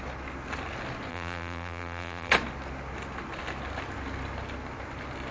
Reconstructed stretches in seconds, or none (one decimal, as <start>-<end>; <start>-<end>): 1.1-2.3